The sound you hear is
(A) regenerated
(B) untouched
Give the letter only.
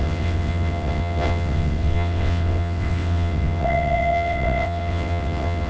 A